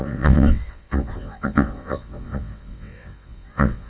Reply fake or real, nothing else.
fake